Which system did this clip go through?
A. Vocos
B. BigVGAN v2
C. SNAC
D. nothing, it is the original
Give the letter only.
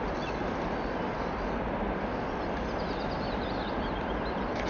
D